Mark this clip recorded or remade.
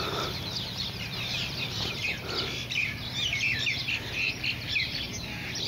remade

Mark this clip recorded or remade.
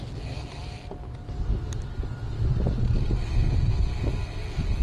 recorded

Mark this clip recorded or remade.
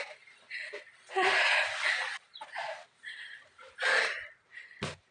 remade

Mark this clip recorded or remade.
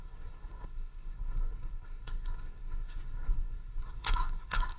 remade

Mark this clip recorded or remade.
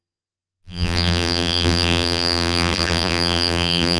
remade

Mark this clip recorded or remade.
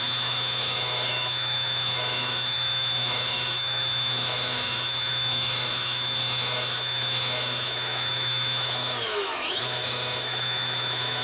remade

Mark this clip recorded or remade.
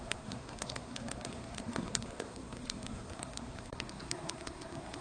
remade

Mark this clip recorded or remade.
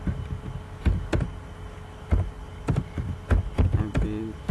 recorded